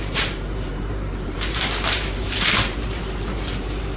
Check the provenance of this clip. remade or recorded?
remade